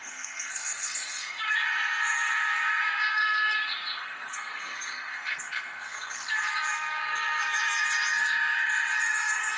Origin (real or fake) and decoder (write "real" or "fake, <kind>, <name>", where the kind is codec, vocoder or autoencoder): fake, codec, SNAC